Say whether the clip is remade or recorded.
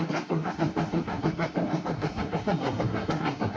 remade